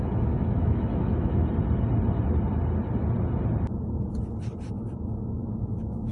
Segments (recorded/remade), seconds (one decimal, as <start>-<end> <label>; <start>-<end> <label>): 0.0-1.4 remade; 1.4-5.1 recorded; 5.1-6.1 remade

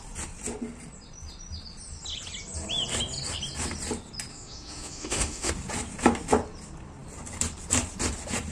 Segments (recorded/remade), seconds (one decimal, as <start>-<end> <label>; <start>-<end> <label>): 0.0-4.3 recorded; 4.3-5.5 remade; 5.5-8.5 recorded

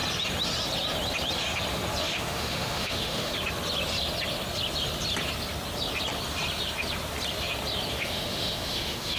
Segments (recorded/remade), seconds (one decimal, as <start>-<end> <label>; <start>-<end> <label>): 0.0-2.0 recorded; 2.0-3.3 remade; 3.3-7.9 recorded; 7.9-9.2 remade